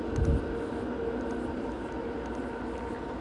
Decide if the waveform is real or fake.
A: real